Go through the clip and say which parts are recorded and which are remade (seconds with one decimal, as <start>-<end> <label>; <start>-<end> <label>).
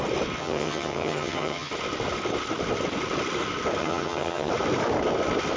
0.0-0.4 recorded; 0.4-1.7 remade; 1.7-3.8 recorded; 3.8-4.5 remade; 4.5-5.6 recorded